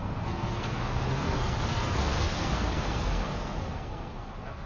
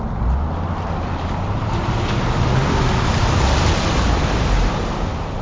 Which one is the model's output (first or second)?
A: first